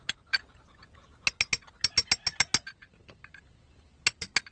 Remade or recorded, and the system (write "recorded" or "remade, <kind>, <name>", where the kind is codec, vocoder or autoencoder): recorded